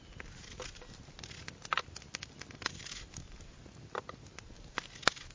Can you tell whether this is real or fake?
real